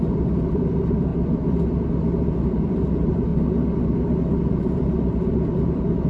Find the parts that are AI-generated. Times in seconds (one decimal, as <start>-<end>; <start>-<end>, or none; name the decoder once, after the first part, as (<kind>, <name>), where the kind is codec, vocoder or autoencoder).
0.0-1.1 (vocoder, BigVGAN v2); 2.4-3.3; 4.5-6.1